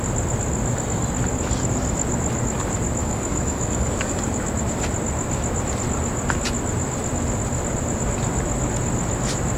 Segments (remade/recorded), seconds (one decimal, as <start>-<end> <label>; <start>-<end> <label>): 0.0-3.0 recorded; 3.0-4.5 remade; 4.5-9.6 recorded